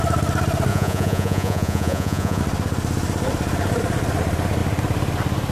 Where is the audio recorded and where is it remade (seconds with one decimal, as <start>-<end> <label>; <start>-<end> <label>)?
0.0-0.7 recorded; 0.7-2.4 remade; 2.4-5.5 recorded

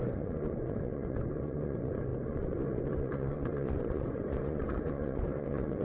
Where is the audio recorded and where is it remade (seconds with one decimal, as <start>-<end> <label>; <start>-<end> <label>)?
0.0-5.8 remade

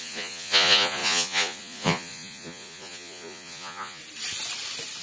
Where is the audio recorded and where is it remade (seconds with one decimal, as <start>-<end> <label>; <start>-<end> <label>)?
0.0-4.0 remade; 4.0-5.0 recorded

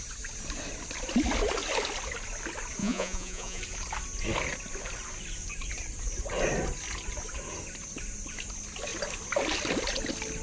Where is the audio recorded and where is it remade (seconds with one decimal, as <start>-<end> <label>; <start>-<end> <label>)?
0.0-2.8 recorded; 2.8-3.6 remade; 3.6-10.4 recorded

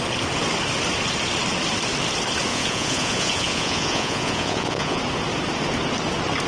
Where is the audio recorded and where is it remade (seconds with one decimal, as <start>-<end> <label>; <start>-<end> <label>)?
0.0-2.5 recorded; 2.5-5.0 remade; 5.0-6.5 recorded

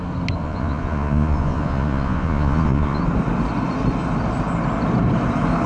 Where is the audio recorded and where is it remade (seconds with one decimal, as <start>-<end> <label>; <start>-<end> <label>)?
0.0-0.4 recorded; 0.4-3.0 remade; 3.0-5.7 recorded

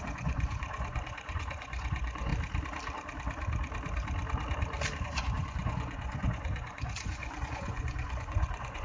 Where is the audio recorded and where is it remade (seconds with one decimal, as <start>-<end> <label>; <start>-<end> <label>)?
0.0-2.3 remade; 2.3-5.0 recorded; 5.0-8.8 remade